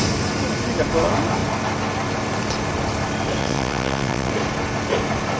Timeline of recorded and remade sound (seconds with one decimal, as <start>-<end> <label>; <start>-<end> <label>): 0.0-3.4 recorded; 3.4-4.3 remade; 4.3-5.4 recorded